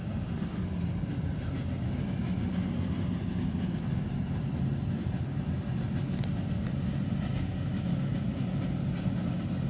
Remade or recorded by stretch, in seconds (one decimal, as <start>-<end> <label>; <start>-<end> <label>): 0.0-9.7 recorded